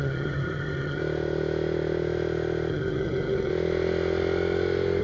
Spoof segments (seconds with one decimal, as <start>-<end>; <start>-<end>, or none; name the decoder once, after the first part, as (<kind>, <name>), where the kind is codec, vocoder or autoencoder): 0.0-1.0 (vocoder, HiFi-GAN); 2.7-3.5